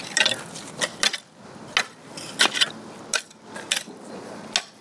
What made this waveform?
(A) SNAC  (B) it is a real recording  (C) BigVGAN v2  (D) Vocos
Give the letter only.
B